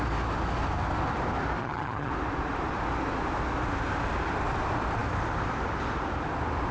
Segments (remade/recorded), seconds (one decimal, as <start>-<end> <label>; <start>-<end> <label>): 0.0-1.6 recorded; 1.6-2.1 remade; 2.1-6.7 recorded